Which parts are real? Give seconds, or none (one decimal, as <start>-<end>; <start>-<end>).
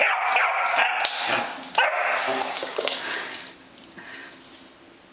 0.0-2.2; 3.4-5.1